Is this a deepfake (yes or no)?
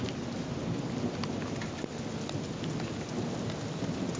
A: no